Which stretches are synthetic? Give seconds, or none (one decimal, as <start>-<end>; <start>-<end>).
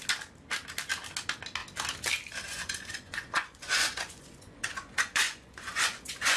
2.5-6.4